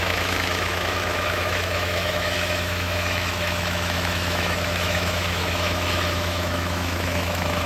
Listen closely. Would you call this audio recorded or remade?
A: remade